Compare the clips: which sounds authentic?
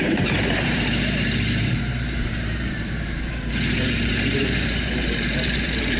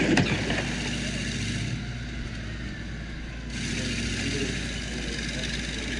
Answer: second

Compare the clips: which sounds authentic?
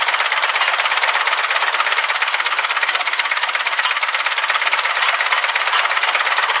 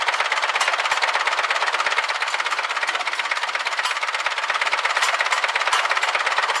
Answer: second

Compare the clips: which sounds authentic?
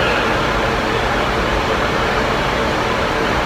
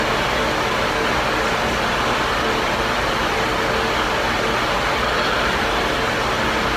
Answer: second